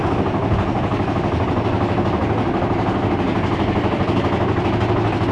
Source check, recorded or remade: recorded